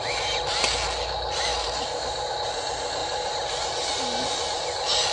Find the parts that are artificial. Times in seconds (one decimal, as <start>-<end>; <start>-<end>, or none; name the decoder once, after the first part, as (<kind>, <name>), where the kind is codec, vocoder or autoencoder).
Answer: 1.5-2.2 (vocoder, BigVGAN v2)

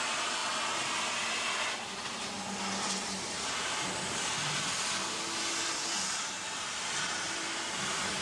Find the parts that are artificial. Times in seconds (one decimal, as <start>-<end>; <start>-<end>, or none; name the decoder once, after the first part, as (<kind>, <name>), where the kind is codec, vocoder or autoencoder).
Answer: none

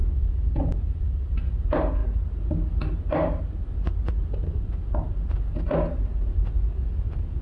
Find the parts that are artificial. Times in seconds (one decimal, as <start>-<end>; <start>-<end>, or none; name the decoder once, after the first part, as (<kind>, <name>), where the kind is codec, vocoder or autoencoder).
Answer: none

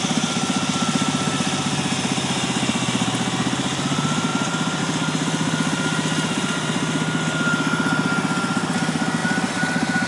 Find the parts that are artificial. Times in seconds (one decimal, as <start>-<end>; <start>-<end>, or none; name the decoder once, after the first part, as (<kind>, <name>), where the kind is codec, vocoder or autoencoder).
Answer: 4.3-4.8 (vocoder, BigVGAN v2); 9.2-10.1